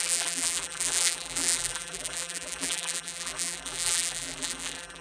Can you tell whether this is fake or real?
fake